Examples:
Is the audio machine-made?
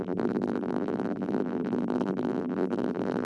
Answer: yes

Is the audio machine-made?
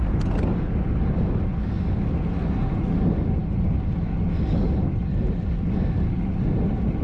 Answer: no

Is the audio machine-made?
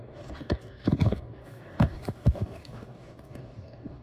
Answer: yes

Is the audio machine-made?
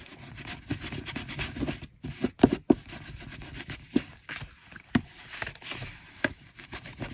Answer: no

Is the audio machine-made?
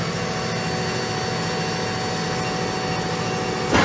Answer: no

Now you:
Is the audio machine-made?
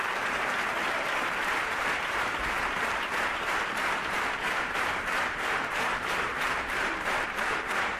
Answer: yes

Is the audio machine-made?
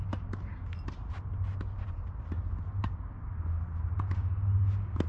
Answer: no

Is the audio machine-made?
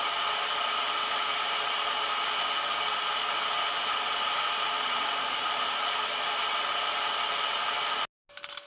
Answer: no